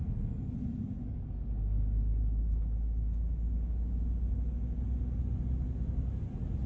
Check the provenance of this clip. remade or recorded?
recorded